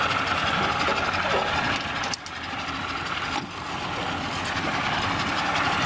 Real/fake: real